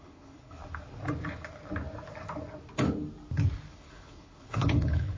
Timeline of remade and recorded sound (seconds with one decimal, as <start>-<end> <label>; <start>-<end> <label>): 0.0-0.6 remade; 0.6-3.7 recorded; 3.7-5.2 remade